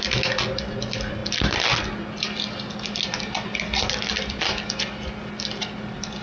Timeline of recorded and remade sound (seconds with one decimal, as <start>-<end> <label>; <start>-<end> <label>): 0.0-6.2 recorded